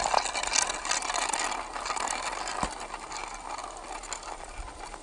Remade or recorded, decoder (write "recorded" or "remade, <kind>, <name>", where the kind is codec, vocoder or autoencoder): recorded